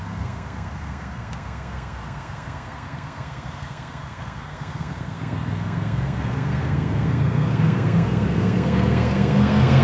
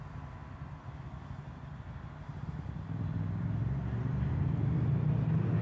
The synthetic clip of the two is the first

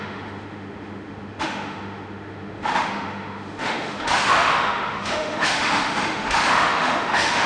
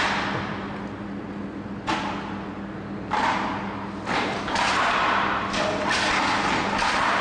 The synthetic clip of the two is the first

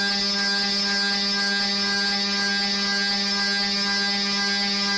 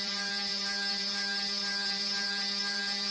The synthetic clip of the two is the second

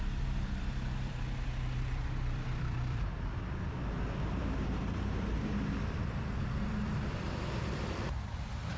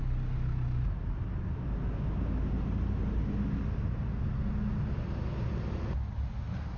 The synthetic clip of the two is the first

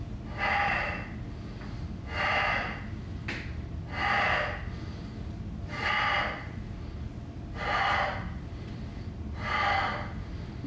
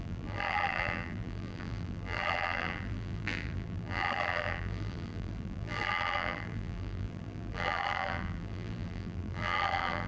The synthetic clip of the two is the second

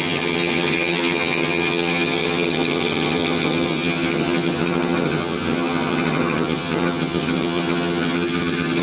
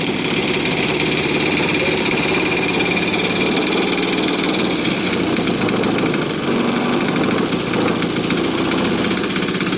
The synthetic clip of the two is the first